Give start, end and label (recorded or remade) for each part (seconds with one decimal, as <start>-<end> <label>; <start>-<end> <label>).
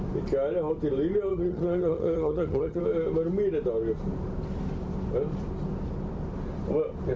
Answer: 0.0-1.3 recorded; 1.3-2.8 remade; 2.8-7.2 recorded